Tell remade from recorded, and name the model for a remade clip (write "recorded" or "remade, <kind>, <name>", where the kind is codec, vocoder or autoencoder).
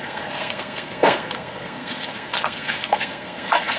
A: remade, codec, SNAC